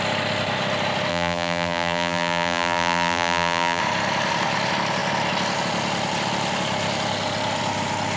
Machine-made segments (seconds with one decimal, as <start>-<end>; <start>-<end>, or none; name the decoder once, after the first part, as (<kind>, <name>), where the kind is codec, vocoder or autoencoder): 1.1-3.8 (vocoder, BigVGAN v2)